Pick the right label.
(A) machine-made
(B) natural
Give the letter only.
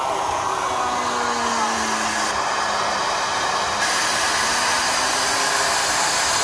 B